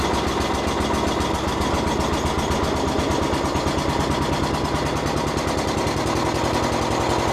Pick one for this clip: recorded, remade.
recorded